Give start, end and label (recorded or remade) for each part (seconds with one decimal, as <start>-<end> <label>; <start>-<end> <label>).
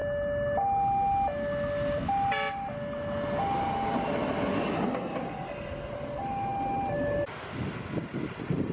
0.0-8.7 recorded